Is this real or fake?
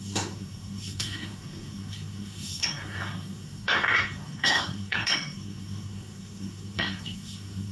fake